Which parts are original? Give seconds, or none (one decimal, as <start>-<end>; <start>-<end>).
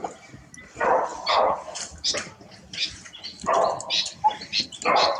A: 0.0-5.2